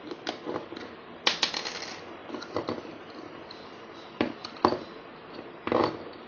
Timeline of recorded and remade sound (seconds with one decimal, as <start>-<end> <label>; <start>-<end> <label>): 0.0-2.2 recorded; 2.2-3.6 remade; 3.6-6.3 recorded